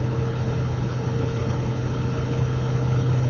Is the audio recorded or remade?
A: remade